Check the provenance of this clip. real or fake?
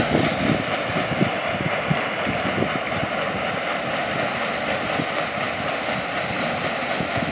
real